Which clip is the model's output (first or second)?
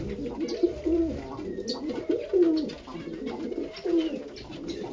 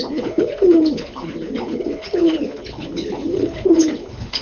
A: second